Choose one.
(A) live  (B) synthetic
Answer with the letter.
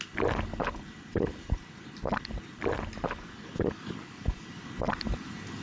A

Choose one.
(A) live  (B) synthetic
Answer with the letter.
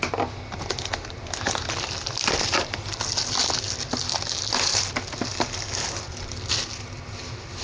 A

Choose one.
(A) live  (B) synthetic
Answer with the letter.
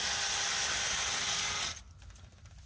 A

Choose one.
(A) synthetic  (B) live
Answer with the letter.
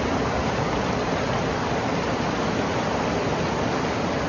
B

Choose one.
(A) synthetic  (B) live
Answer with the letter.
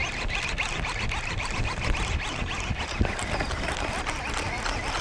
B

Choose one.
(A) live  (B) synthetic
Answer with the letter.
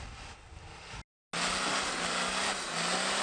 A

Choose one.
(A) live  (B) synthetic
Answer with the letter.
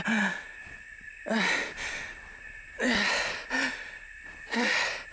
A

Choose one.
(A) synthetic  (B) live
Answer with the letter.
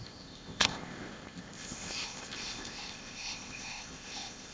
A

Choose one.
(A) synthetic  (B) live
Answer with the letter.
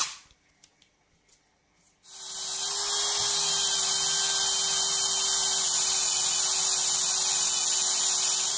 B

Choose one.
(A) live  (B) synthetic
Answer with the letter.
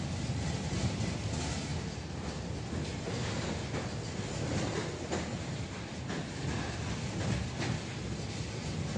A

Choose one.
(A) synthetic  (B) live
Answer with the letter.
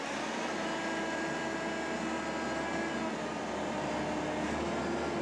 B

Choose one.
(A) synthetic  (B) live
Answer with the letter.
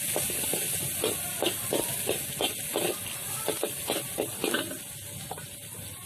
B